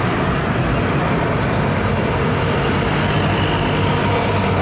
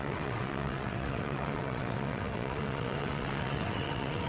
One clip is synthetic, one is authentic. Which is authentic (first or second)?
first